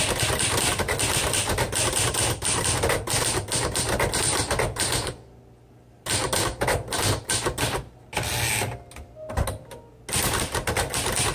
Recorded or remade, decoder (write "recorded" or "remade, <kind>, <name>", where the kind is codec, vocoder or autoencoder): recorded